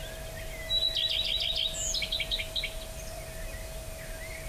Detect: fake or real real